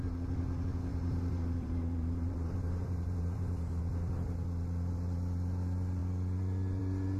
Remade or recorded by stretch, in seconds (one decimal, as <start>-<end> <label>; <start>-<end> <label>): 0.0-0.9 recorded; 0.9-3.8 remade; 3.8-7.2 recorded